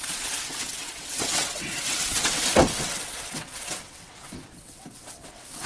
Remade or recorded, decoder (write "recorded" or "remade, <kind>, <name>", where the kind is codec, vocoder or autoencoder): remade, vocoder, WaveNeXt